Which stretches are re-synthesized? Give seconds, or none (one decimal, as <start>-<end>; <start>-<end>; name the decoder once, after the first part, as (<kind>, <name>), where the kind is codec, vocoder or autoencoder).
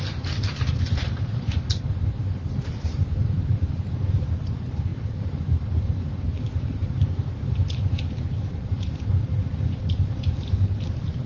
1.1-3.8 (vocoder, BigVGAN v2); 4.9-7.8